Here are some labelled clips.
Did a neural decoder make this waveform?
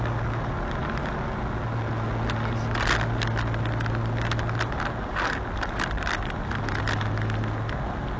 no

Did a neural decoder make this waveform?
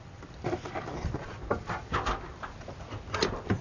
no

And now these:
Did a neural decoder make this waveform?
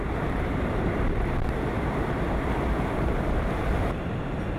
yes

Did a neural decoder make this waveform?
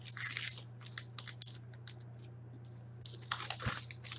no